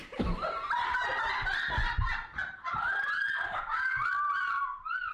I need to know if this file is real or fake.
real